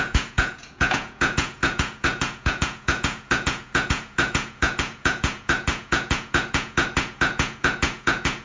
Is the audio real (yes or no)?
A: no